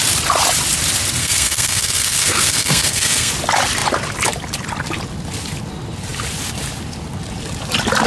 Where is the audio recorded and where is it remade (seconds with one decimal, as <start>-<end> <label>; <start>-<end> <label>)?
0.0-1.2 recorded; 1.2-3.3 remade; 3.3-8.1 recorded